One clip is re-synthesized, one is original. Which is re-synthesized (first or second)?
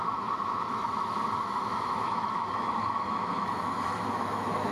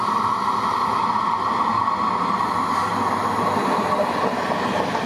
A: first